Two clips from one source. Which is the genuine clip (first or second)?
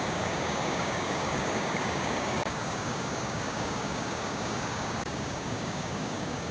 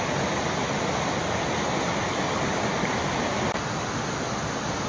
second